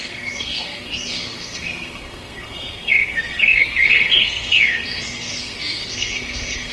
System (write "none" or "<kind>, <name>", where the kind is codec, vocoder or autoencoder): codec, SNAC